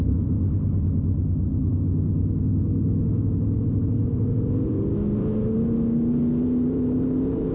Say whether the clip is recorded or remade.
recorded